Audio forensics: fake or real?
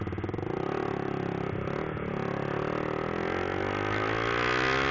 real